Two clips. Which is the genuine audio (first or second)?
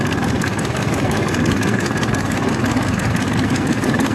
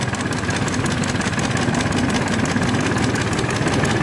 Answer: second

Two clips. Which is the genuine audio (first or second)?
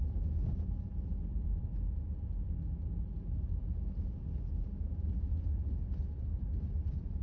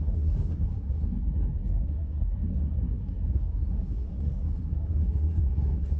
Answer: first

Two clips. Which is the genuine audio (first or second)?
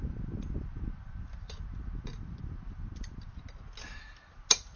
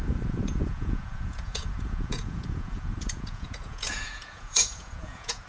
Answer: first